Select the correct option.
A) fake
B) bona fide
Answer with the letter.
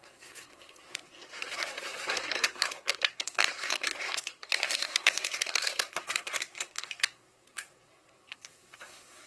A